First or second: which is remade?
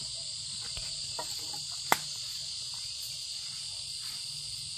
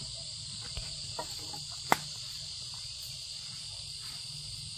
second